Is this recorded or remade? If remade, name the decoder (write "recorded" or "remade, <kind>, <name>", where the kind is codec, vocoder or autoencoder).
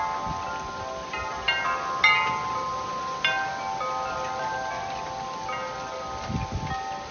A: recorded